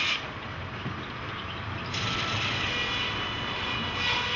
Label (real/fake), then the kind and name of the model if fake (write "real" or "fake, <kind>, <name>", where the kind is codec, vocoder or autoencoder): real